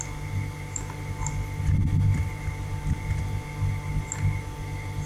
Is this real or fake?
real